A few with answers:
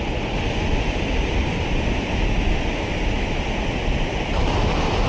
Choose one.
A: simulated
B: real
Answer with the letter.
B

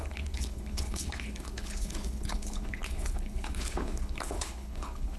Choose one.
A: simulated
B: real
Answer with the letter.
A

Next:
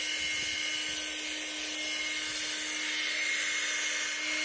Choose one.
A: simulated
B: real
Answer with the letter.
B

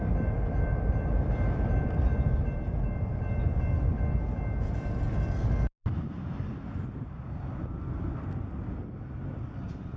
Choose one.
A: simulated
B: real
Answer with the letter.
B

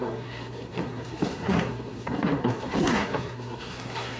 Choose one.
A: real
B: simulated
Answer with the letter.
B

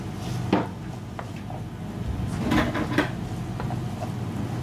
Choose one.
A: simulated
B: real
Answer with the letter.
B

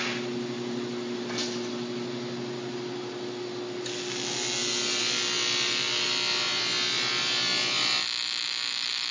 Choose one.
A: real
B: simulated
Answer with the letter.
A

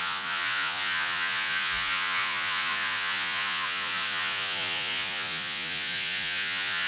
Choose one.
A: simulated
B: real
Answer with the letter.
A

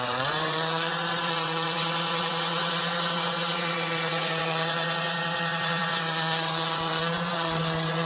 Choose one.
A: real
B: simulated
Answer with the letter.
B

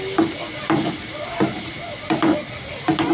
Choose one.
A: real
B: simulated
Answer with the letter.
A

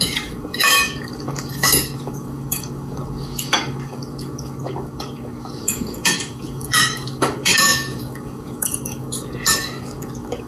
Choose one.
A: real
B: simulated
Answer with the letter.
B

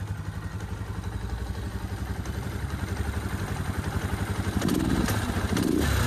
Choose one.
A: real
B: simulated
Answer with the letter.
A